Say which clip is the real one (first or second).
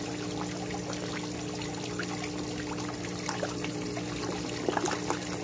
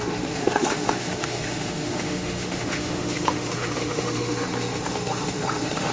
first